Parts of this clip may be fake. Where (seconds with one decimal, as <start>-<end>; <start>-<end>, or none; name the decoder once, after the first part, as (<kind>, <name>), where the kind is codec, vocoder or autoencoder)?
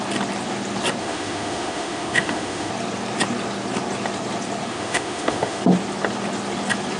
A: 1.0-2.7 (autoencoder, DAC-VAE); 4.7-5.6